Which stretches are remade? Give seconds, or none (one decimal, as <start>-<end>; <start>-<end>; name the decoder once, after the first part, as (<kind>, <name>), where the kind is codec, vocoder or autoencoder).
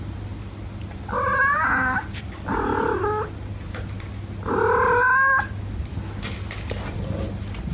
none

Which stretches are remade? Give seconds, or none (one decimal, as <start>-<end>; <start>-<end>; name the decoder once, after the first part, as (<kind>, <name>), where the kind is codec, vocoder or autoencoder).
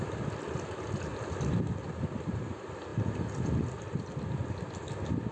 1.1-2.2 (vocoder, BigVGAN v2)